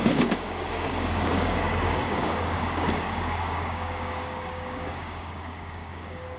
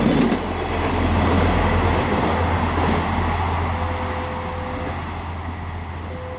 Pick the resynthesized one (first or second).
first